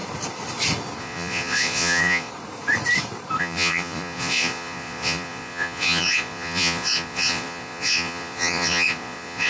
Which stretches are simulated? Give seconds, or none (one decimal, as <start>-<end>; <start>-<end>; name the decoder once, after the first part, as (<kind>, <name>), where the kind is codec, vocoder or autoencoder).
1.0-2.3 (vocoder, Vocos); 3.4-9.5